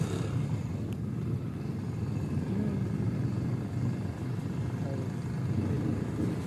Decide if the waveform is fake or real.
real